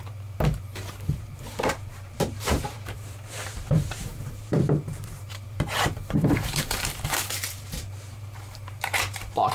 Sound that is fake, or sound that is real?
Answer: fake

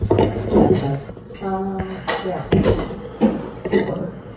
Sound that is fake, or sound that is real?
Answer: real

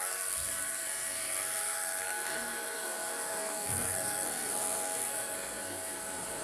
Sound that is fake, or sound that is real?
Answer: fake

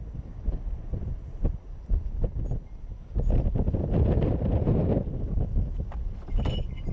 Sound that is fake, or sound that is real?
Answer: real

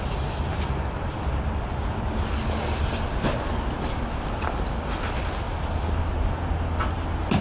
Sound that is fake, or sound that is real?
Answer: real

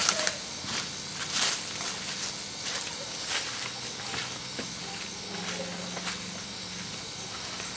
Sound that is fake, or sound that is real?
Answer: real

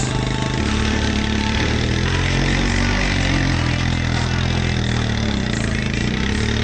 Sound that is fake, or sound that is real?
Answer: real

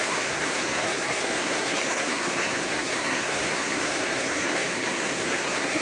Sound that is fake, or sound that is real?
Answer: fake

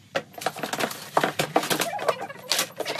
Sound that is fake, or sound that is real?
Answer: real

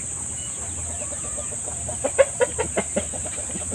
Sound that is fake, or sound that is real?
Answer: fake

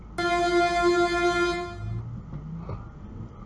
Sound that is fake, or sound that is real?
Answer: real